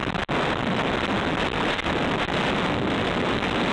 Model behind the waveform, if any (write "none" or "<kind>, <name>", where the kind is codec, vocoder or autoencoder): none